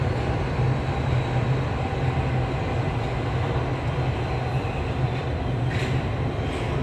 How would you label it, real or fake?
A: real